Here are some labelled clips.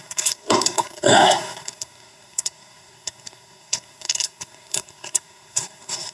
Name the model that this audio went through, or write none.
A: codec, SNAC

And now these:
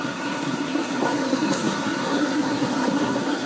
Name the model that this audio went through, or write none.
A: codec, SNAC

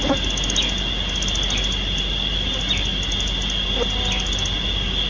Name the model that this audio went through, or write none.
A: none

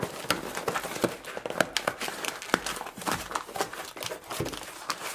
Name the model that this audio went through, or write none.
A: none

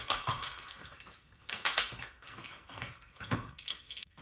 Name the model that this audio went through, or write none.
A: codec, SNAC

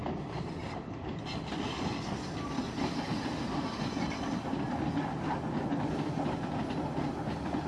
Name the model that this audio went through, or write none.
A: none